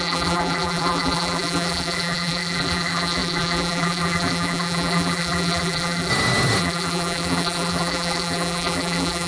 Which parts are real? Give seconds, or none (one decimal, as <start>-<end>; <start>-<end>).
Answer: 6.1-6.6